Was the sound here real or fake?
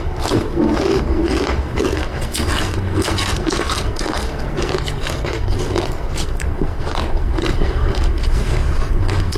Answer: fake